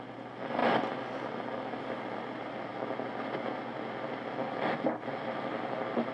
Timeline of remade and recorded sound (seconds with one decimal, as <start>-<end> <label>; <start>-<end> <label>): 0.0-0.6 remade; 0.6-1.8 recorded; 1.8-2.7 remade; 2.7-4.7 recorded; 4.7-6.1 remade

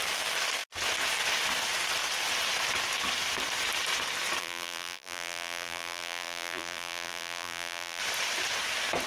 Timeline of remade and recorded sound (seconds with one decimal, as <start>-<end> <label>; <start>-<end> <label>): 0.0-4.4 recorded; 4.4-8.0 remade; 8.0-9.1 recorded

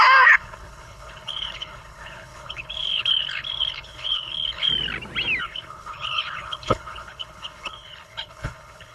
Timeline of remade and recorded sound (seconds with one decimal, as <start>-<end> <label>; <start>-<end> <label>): 0.0-4.7 remade; 4.7-5.4 recorded; 5.4-8.9 remade

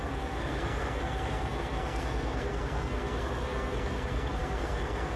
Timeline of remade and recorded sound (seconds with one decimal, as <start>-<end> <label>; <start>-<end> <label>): 0.0-5.2 remade

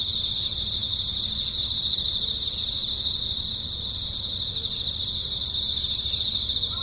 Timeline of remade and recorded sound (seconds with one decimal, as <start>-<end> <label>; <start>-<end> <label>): 0.0-6.8 recorded

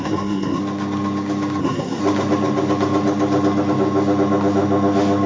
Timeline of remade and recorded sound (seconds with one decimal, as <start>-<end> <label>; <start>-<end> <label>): 0.0-0.6 remade; 0.6-1.6 recorded; 1.6-2.0 remade; 2.0-5.3 recorded

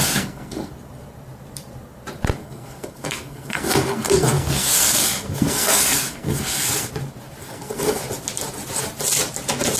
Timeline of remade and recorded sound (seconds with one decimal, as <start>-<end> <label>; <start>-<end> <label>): 0.0-0.7 remade; 0.7-2.4 recorded; 2.4-6.9 remade; 6.9-7.4 recorded; 7.4-8.0 remade; 8.0-9.8 recorded